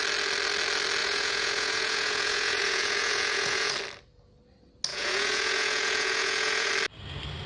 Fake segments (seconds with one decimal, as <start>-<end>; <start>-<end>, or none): 1.0-3.7; 4.9-6.7